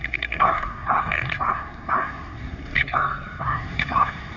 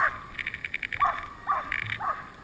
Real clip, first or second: second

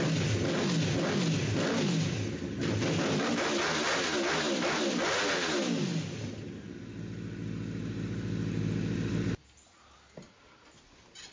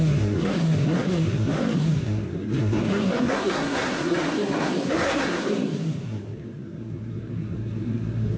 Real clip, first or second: first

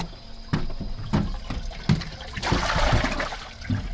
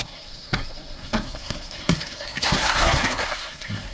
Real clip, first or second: first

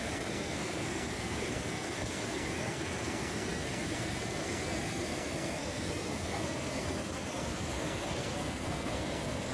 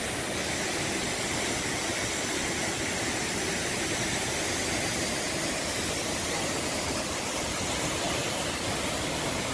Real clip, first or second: second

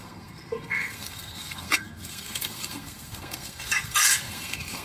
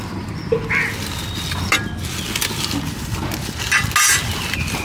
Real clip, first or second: second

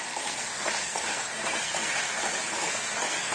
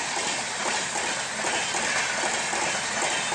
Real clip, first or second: second